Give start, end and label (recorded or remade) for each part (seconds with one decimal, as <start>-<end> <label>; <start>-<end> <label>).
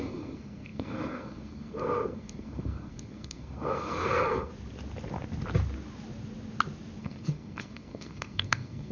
0.0-4.5 remade; 4.5-7.0 recorded; 7.0-8.9 remade